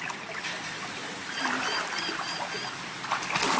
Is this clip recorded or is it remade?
recorded